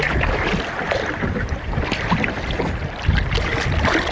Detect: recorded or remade recorded